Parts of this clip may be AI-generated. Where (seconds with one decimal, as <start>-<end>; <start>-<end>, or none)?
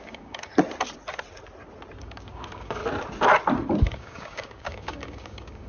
0.0-0.5; 2.0-2.8; 3.8-5.7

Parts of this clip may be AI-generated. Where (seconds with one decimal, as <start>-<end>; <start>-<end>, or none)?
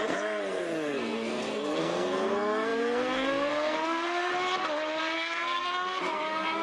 0.0-4.3; 5.0-6.6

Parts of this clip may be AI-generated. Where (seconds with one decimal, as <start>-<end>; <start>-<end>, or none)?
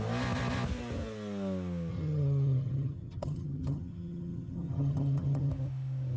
1.9-5.5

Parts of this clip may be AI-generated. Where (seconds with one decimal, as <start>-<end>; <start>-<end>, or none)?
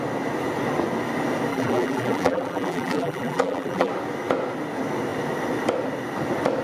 1.5-3.9